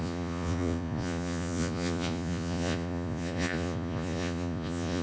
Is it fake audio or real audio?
fake